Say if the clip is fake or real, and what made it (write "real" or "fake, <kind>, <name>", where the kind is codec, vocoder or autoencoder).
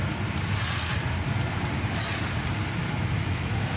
real